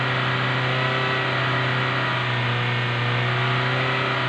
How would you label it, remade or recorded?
recorded